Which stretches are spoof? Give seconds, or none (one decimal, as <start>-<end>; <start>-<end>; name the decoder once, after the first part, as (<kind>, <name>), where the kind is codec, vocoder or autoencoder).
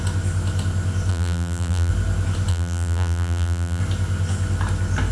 1.1-1.9 (vocoder, BigVGAN v2); 2.5-3.8